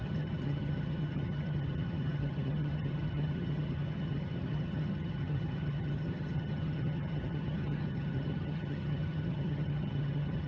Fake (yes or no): yes